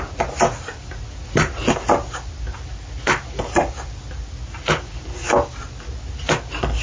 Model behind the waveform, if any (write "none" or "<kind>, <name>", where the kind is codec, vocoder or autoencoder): none